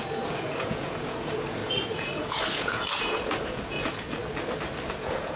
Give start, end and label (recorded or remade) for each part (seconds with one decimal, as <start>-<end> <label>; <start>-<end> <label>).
0.0-4.2 remade; 4.2-4.9 recorded; 4.9-5.4 remade